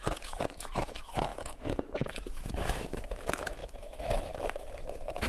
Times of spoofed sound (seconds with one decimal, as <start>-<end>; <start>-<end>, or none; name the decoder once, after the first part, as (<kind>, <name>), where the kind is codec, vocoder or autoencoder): 0.0-5.3 (autoencoder, DAC-VAE)